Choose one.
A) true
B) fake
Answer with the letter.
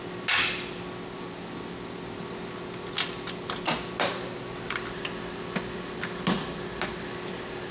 A